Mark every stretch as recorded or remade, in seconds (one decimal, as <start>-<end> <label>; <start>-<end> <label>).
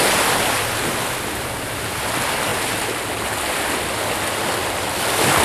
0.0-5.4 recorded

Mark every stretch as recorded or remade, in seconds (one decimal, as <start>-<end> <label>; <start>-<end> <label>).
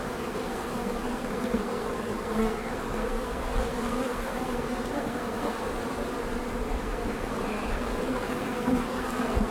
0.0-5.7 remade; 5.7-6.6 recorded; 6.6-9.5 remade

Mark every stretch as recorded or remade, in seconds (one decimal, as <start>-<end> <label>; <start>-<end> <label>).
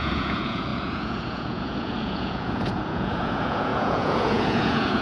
0.0-5.0 remade